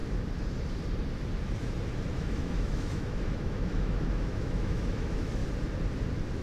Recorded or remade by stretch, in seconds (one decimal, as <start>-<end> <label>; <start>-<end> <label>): 0.0-2.1 recorded; 2.1-5.4 remade; 5.4-6.4 recorded